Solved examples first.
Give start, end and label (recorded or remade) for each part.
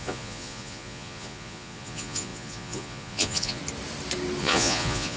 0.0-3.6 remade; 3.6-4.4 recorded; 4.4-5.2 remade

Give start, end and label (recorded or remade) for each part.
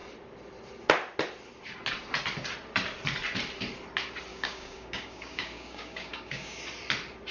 0.0-4.3 recorded; 4.3-6.6 remade; 6.6-7.3 recorded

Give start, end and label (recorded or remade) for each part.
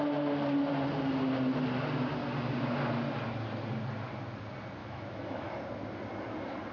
0.0-4.8 recorded; 4.8-5.6 remade; 5.6-6.7 recorded